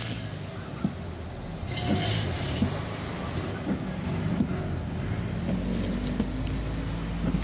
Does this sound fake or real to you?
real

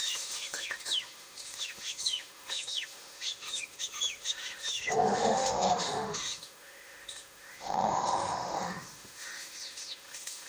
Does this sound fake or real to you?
fake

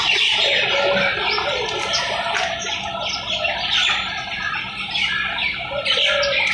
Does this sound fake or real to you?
real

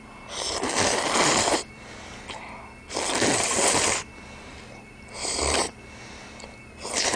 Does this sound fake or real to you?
real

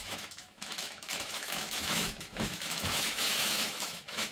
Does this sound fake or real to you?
fake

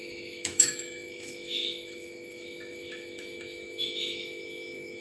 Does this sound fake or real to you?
fake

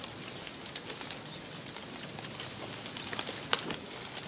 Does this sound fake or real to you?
real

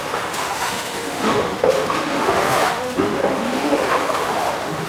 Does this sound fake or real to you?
fake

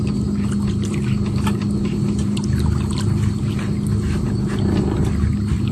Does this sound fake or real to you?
real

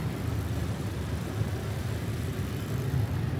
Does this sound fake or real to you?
real